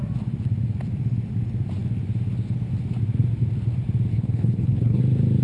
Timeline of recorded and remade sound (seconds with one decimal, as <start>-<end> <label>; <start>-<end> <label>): 0.0-4.1 recorded; 4.1-5.0 remade; 5.0-5.4 recorded